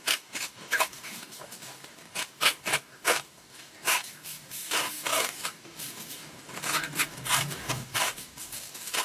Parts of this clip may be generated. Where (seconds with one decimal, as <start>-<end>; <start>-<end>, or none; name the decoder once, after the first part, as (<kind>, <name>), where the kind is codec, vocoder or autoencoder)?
0.0-9.0 (codec, DAC)